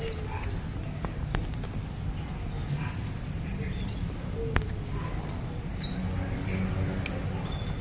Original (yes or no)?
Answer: yes